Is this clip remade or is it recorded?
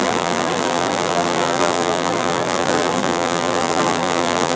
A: remade